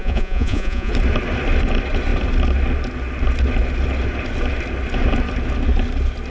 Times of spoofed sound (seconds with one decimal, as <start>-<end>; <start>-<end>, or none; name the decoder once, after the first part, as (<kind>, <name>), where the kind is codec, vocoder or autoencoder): 0.0-0.9 (vocoder, Vocos)